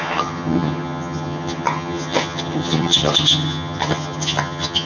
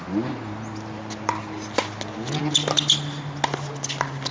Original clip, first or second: second